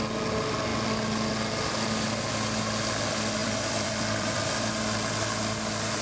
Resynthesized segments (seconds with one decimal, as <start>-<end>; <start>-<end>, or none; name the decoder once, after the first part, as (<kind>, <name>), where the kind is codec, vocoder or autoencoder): 3.4-4.7 (vocoder, BigVGAN v2)